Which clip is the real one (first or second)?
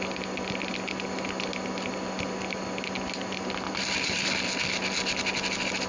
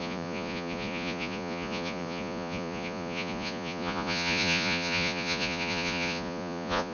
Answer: first